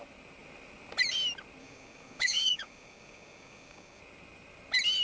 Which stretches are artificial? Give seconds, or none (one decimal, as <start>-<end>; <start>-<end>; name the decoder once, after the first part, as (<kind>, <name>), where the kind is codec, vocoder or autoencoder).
1.6-4.0 (codec, DAC)